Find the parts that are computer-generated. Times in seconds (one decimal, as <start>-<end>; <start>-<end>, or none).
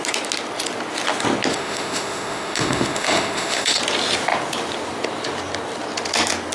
1.5-3.8